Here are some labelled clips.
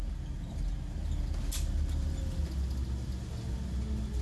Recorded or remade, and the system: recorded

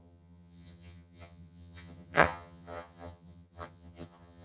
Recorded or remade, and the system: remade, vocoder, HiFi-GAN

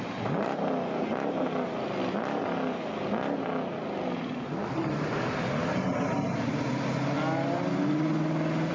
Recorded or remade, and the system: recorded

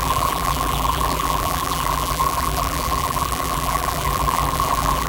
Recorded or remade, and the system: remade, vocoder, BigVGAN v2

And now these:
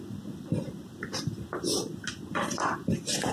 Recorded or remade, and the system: recorded